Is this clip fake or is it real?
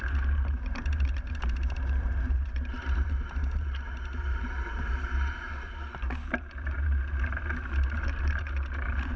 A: fake